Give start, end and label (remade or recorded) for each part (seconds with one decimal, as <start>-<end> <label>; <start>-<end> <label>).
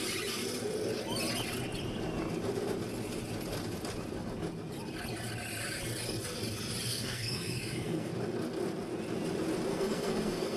0.0-6.9 recorded; 6.9-8.1 remade; 8.1-9.7 recorded; 9.7-10.6 remade